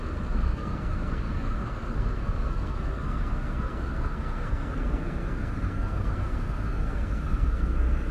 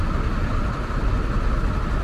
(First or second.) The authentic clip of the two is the second